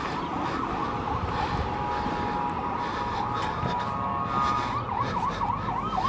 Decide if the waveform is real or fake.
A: real